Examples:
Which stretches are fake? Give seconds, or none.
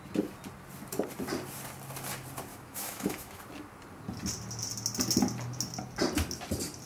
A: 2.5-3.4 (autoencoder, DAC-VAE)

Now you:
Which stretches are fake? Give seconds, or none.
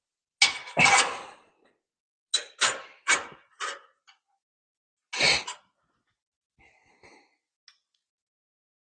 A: none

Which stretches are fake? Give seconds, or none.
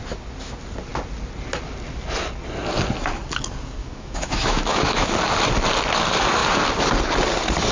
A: 3.8-5.1 (autoencoder, DAC-VAE)